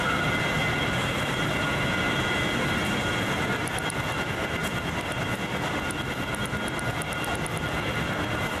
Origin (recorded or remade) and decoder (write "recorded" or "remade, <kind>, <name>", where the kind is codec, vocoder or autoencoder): recorded